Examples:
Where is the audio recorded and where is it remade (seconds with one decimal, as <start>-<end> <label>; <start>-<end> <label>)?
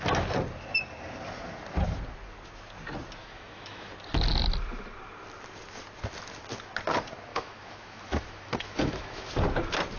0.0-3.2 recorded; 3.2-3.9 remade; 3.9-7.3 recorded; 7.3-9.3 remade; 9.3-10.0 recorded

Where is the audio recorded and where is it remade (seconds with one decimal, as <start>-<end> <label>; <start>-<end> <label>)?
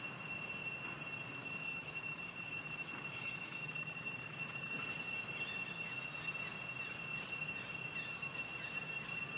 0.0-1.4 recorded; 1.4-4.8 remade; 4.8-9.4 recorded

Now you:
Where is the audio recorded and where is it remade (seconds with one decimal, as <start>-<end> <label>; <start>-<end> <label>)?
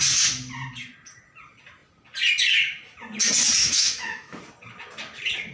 0.0-3.6 recorded; 3.6-4.4 remade; 4.4-5.5 recorded